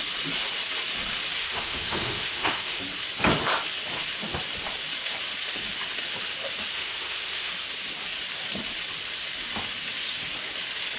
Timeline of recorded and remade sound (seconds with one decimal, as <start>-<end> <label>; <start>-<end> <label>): 0.0-1.4 recorded; 1.4-2.8 remade; 2.8-6.7 recorded; 6.7-7.5 remade; 7.5-11.0 recorded